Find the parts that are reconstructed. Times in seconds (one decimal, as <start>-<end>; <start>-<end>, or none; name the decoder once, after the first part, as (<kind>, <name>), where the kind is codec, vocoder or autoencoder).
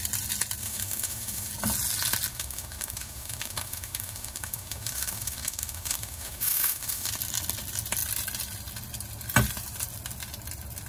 0.6-1.5 (autoencoder, DAC-VAE); 2.3-7.1